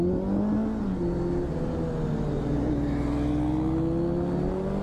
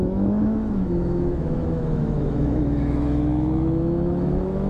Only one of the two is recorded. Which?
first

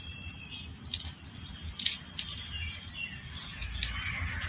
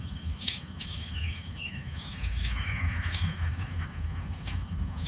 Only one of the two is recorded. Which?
first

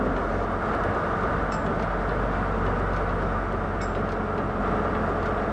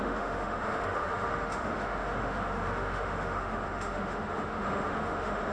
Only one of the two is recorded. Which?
first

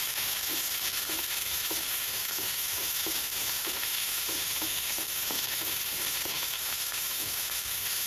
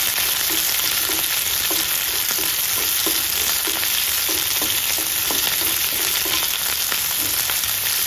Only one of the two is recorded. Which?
second